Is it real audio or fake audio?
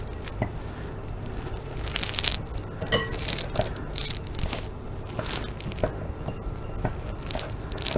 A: real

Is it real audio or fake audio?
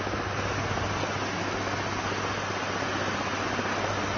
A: real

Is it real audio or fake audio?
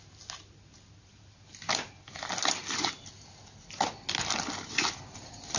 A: real